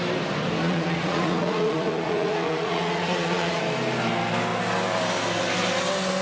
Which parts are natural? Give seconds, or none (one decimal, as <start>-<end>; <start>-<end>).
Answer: 0.0-0.6; 3.6-6.2